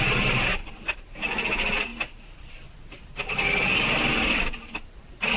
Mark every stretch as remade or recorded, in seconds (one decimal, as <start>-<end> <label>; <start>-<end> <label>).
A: 0.0-0.5 recorded; 0.5-1.2 remade; 1.2-5.4 recorded